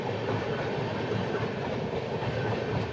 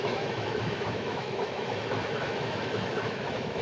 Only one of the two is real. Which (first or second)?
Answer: first